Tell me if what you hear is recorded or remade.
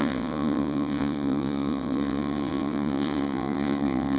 remade